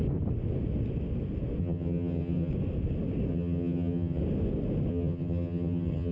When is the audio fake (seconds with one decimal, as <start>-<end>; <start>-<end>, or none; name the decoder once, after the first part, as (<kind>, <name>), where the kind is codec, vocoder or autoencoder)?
1.6-2.5 (vocoder, HiFi-GAN); 3.3-4.2; 4.9-6.1

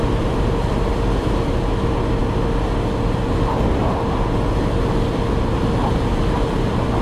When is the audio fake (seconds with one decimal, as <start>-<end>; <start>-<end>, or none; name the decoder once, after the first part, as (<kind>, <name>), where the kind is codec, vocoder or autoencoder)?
none

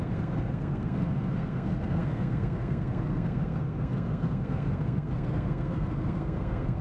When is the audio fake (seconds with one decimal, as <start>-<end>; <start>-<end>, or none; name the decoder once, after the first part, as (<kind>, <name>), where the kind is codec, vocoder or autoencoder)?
0.0-6.8 (codec, SNAC)

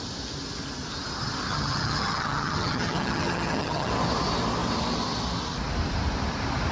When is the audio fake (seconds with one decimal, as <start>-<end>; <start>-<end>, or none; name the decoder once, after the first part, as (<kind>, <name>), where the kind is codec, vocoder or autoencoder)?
1.5-3.9 (vocoder, HiFi-GAN)

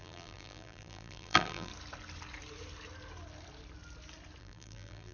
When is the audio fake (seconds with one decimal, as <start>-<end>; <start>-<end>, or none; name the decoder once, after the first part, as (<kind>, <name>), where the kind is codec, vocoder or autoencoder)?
0.0-1.7 (vocoder, BigVGAN v2); 4.4-5.1

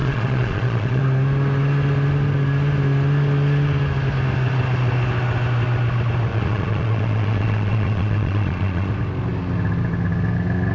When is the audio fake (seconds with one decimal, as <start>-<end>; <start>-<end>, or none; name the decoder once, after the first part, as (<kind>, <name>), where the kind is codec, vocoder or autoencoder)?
0.0-1.0 (vocoder, Vocos); 6.3-8.9